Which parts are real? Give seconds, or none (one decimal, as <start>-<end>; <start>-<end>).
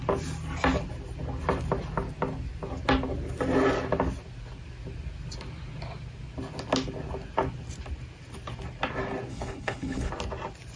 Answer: 0.0-9.3; 10.1-10.8